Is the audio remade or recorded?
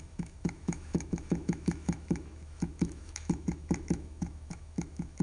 remade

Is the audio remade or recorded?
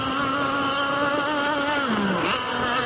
recorded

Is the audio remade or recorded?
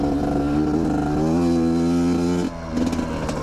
recorded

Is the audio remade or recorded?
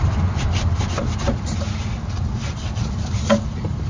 remade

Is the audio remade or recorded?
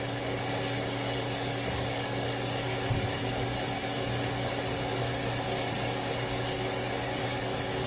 remade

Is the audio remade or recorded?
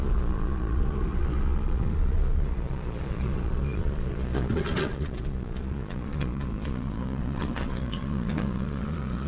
remade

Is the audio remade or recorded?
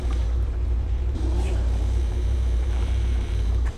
remade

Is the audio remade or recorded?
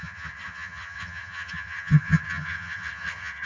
remade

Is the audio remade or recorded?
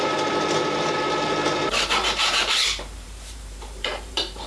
remade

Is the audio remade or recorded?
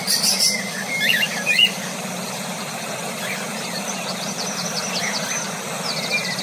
remade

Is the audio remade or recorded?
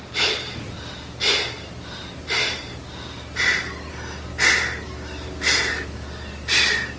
recorded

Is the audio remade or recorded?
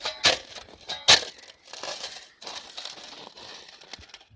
recorded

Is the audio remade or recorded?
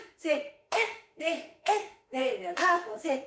remade